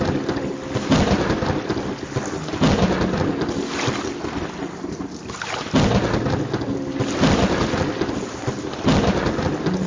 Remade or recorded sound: recorded